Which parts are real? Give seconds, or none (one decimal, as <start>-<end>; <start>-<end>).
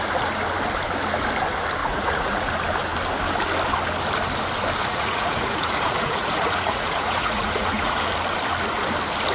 0.0-1.8; 2.5-4.8; 8.0-9.3